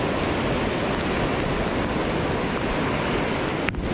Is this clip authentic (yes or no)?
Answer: yes